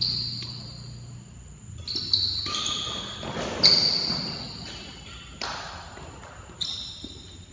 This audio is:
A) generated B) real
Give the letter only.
B